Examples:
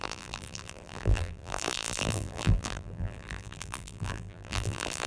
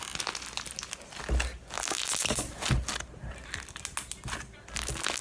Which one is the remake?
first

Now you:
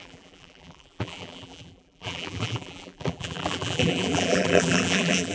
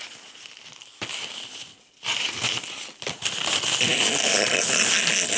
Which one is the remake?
first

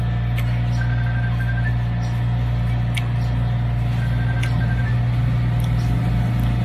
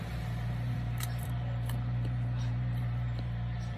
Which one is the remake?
second